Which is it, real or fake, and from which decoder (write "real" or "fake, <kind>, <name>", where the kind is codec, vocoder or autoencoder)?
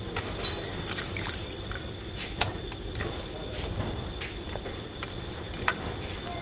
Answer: real